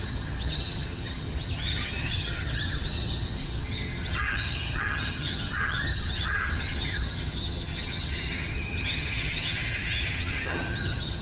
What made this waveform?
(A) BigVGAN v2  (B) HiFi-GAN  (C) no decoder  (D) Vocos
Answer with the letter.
B